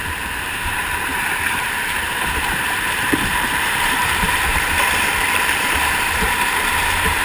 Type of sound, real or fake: fake